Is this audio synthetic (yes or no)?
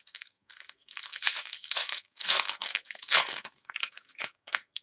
yes